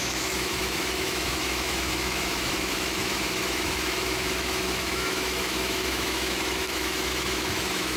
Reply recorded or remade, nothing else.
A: remade